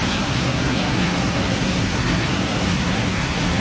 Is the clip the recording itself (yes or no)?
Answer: no